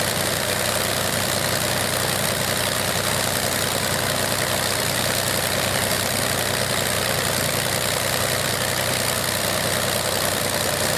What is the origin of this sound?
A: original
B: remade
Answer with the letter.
A